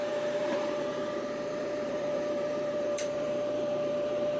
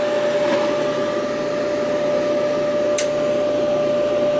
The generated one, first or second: first